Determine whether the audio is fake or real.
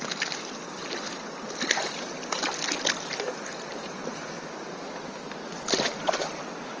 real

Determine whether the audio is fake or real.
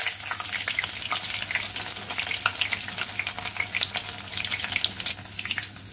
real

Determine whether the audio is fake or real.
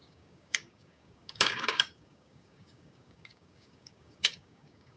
fake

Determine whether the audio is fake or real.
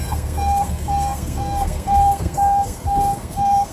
fake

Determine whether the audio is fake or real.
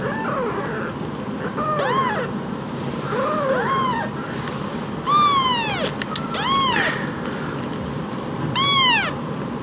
real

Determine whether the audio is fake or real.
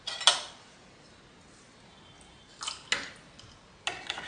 real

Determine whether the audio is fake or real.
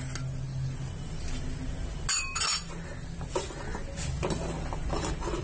real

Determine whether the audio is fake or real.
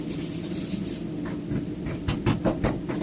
real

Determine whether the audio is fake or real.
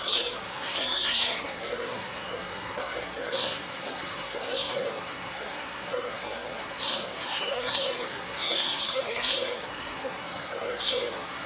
fake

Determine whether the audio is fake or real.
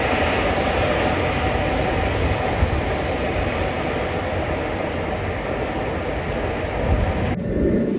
real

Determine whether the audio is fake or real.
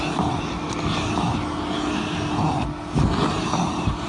real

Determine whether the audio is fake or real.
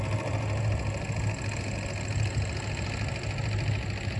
real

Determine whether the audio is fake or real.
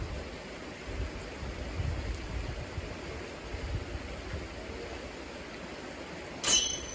real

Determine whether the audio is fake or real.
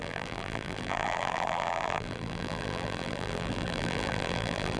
fake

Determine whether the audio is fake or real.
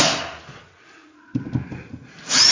real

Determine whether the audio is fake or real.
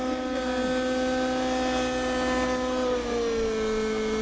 real